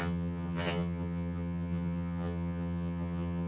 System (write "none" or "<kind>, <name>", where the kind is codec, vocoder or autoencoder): vocoder, HiFi-GAN